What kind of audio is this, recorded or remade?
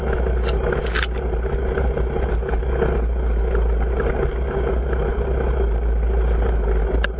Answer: recorded